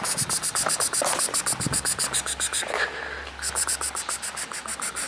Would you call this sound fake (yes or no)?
no